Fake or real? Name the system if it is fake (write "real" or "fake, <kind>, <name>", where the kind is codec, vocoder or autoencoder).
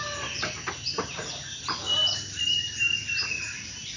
real